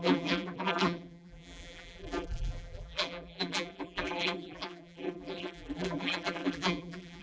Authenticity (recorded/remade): remade